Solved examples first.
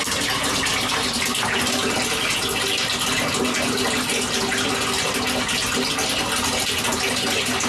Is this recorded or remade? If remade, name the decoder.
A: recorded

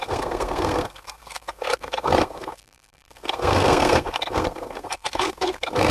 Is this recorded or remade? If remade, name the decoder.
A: remade, codec, SNAC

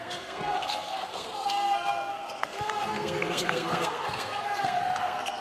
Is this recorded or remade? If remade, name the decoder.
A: remade, codec, SNAC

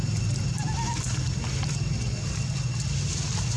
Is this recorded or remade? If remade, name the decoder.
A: recorded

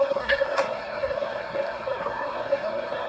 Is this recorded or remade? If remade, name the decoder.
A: remade, codec, SNAC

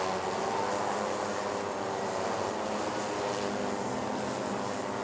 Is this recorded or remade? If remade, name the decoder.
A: recorded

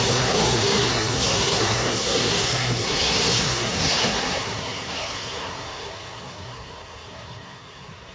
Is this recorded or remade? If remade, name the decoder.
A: remade, codec, SNAC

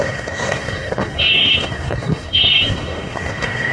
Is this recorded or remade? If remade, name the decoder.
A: remade, codec, SNAC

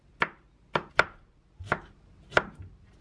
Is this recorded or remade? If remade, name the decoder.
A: recorded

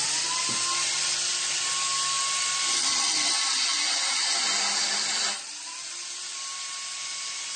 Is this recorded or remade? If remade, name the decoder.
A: recorded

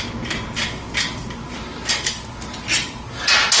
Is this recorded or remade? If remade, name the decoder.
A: recorded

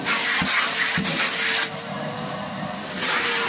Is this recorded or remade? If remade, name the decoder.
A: recorded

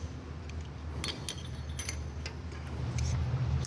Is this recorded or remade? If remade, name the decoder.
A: recorded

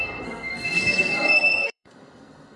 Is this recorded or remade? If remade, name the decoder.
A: remade, codec, SNAC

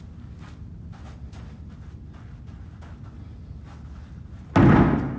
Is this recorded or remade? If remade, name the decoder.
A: recorded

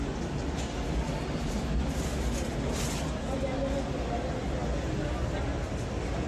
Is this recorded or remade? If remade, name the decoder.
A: recorded